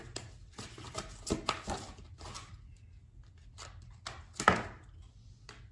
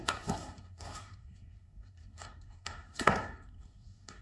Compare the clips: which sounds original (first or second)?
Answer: first